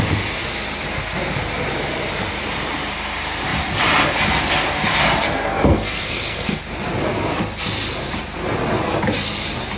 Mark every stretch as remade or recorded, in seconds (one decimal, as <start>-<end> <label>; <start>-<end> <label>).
0.0-5.1 recorded; 5.1-6.6 remade; 6.6-9.8 recorded